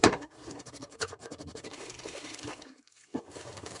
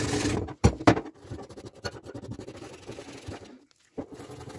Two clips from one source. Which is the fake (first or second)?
first